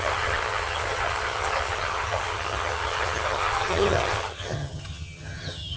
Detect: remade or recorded remade